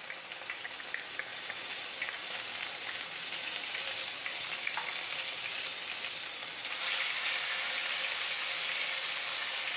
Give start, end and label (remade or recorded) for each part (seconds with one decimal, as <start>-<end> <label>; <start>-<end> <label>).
0.0-1.3 recorded; 1.3-3.7 remade; 3.7-9.8 recorded

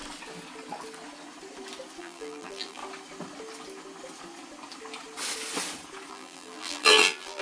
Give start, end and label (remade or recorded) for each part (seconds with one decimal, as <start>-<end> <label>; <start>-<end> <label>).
0.0-2.0 recorded; 2.0-2.8 remade; 2.8-6.1 recorded; 6.1-7.4 remade

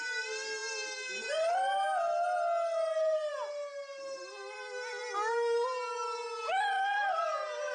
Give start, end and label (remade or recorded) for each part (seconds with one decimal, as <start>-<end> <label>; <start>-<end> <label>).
0.0-7.7 recorded

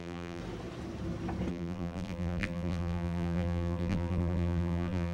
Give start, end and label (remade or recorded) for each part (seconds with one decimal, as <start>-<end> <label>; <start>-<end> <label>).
0.0-0.4 remade; 0.4-1.5 recorded; 1.5-5.1 remade

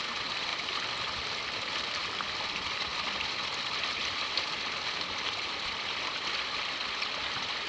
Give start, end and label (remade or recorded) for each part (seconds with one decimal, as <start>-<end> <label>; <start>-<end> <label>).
0.0-2.9 remade; 2.9-7.0 recorded; 7.0-7.7 remade